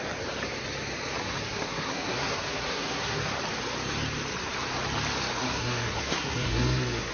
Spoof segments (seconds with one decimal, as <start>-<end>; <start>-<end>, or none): 1.2-3.4; 5.4-7.1

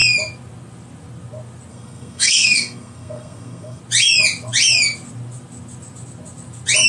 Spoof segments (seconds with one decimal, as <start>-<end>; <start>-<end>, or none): 1.7-3.8

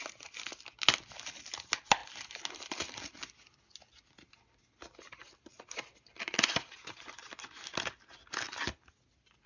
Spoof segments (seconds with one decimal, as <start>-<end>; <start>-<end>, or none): none

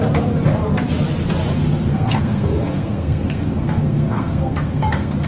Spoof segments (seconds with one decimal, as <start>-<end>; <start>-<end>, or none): 1.9-5.3